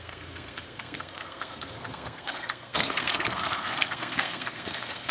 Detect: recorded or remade remade